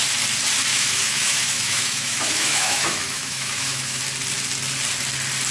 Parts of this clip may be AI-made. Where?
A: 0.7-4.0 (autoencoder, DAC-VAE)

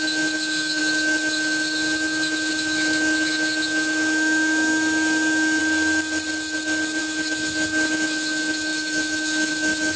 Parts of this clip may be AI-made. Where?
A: 0.0-5.6 (autoencoder, DAC-VAE); 7.0-10.0

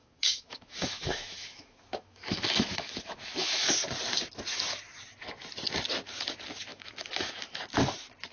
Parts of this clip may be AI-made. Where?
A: 0.0-3.7 (autoencoder, DAC-VAE); 6.7-7.6

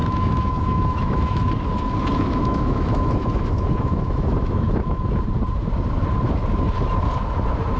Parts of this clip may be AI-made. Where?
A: 0.0-1.5 (autoencoder, DAC-VAE); 2.1-5.1

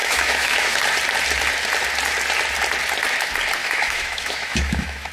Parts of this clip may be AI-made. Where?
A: 0.0-0.8 (autoencoder, DAC-VAE); 3.6-5.1

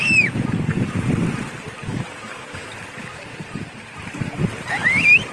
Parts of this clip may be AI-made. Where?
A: 1.9-2.7 (autoencoder, DAC-VAE)

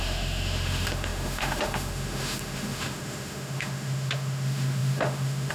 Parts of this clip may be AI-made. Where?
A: 0.0-5.5 (autoencoder, DAC-VAE)